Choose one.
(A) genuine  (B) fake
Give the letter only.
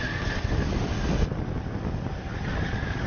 A